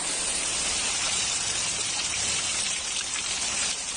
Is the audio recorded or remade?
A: remade